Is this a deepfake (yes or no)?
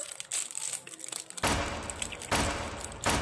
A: no